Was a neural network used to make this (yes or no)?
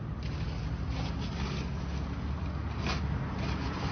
no